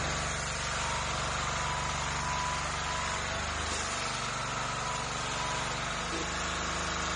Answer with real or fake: real